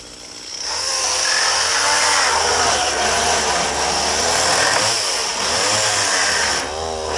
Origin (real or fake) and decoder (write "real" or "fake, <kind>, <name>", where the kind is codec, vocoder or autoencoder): real